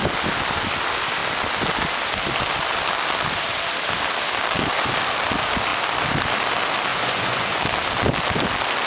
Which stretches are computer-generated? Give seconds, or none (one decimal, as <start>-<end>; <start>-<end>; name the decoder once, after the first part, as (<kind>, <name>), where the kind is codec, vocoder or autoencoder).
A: 6.9-7.6 (vocoder, Vocos)